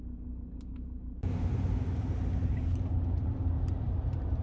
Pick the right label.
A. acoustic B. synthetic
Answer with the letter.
B